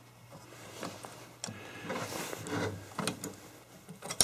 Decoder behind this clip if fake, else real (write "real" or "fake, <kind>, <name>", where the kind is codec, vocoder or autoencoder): real